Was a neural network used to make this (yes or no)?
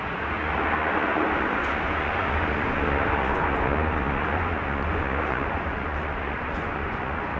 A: yes